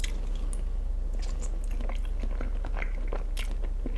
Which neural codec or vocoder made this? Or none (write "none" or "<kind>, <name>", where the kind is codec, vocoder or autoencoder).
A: none